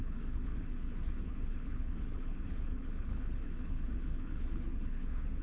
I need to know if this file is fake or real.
fake